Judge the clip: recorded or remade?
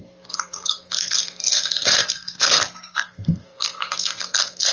remade